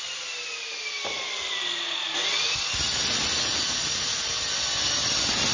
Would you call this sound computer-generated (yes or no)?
no